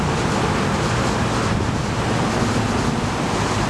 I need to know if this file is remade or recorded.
recorded